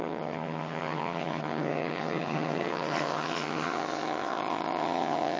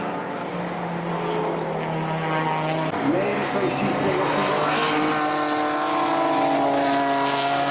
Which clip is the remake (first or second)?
first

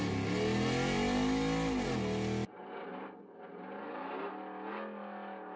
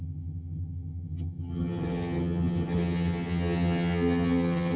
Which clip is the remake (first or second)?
second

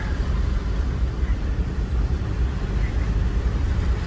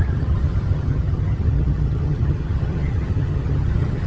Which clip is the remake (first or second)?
second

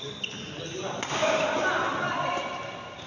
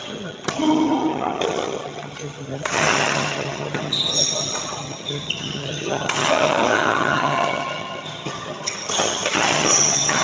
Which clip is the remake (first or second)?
second